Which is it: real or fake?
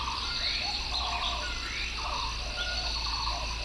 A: real